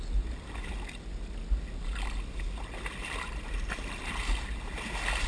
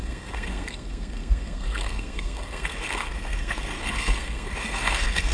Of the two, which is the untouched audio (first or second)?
first